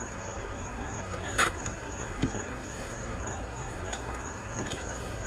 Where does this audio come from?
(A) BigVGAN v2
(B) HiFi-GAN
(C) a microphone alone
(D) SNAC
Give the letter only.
D